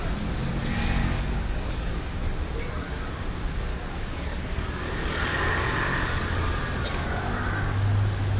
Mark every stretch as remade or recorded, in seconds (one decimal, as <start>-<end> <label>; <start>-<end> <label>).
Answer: 0.0-1.0 recorded; 1.0-2.2 remade; 2.2-3.7 recorded; 3.7-4.8 remade; 4.8-5.9 recorded; 5.9-6.5 remade; 6.5-8.4 recorded